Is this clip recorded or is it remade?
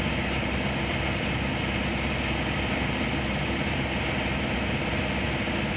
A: recorded